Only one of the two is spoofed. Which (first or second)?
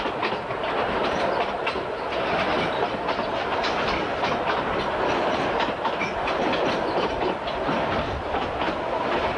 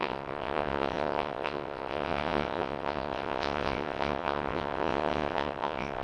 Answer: second